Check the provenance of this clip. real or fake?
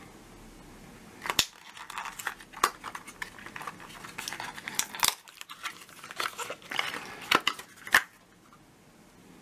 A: real